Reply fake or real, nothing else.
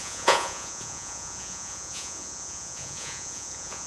fake